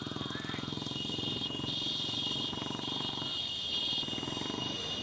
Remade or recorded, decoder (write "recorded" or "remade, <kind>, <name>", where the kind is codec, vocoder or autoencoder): recorded